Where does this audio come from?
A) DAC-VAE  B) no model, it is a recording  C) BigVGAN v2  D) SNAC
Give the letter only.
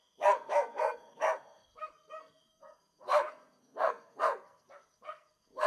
D